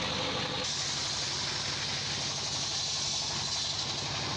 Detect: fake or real real